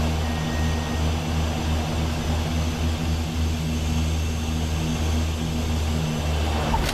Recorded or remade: recorded